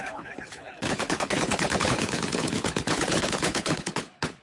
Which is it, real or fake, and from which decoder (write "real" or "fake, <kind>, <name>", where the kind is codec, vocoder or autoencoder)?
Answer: fake, codec, HILCodec